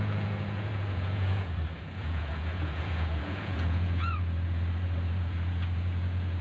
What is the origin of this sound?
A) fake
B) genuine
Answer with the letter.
A